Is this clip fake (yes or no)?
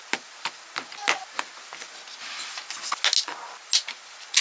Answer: no